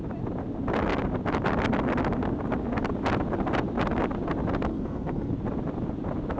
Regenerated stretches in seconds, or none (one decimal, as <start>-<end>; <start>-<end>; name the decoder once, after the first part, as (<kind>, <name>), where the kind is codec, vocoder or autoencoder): 4.7-5.3 (codec, SNAC)